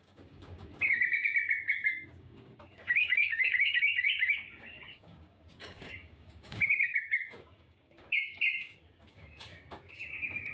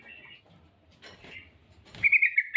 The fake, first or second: first